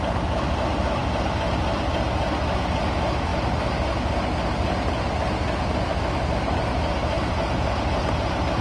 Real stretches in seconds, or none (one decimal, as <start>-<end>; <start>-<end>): 0.0-8.6